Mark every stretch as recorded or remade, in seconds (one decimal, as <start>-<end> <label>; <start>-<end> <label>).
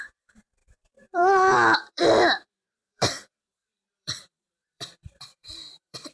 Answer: 0.0-6.1 remade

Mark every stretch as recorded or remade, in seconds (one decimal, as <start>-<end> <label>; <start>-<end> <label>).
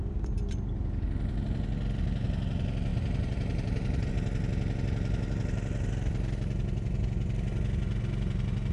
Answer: 0.0-2.9 recorded; 2.9-4.1 remade; 4.1-8.7 recorded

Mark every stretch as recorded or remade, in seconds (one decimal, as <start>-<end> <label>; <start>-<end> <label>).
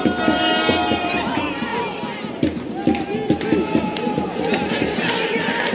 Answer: 0.0-1.7 remade; 1.7-4.7 recorded; 4.7-5.7 remade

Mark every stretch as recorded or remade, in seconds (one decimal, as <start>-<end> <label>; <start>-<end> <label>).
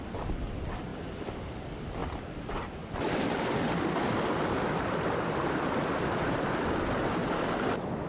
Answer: 0.0-0.9 recorded; 0.9-1.4 remade; 1.4-2.0 recorded; 2.0-6.7 remade; 6.7-8.1 recorded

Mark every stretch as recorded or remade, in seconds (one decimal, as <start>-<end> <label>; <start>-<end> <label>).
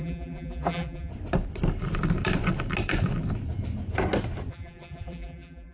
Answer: 0.0-1.1 remade; 1.1-4.5 recorded; 4.5-5.7 remade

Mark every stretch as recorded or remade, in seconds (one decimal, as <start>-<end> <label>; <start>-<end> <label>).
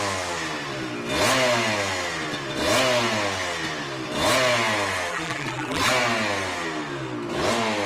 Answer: 0.0-5.1 recorded; 5.1-5.9 remade; 5.9-7.9 recorded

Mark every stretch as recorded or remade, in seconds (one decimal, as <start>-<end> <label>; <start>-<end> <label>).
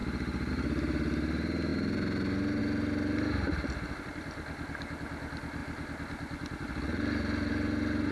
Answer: 0.0-8.1 recorded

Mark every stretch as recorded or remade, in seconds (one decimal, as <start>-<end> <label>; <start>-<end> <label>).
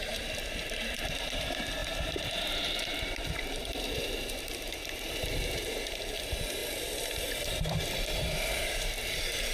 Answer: 0.0-6.6 remade; 6.6-8.0 recorded; 8.0-9.5 remade